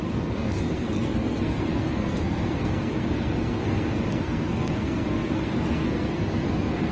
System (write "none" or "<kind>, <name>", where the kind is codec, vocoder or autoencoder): codec, SNAC